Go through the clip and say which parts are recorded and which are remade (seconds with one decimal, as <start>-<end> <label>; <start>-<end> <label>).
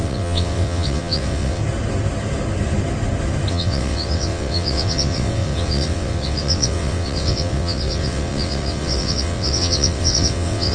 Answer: 0.0-1.6 remade; 1.6-3.5 recorded; 3.5-10.7 remade